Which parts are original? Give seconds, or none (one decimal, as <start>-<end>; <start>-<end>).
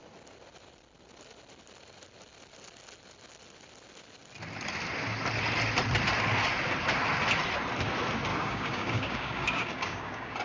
0.0-8.3